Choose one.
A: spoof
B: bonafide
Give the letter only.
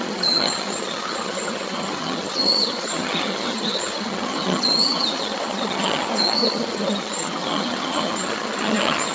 A